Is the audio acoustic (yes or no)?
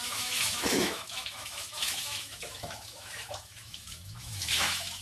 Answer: no